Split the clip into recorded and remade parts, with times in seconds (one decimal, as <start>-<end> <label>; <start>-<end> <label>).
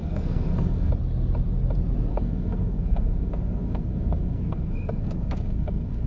0.0-0.9 remade; 0.9-2.1 recorded; 2.1-6.1 remade